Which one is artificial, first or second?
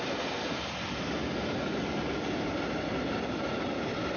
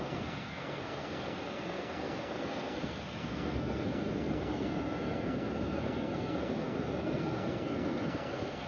second